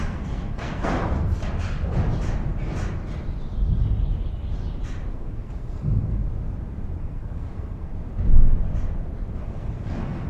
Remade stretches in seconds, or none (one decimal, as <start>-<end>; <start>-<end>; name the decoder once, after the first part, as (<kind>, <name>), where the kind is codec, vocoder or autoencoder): 0.0-1.4 (codec, SNAC); 5.1-6.2; 7.0-7.9; 9.4-10.3